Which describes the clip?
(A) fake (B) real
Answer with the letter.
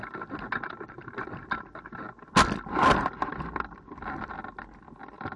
B